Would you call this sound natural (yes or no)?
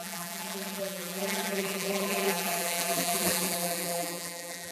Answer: no